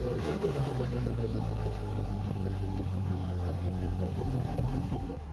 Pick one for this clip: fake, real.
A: fake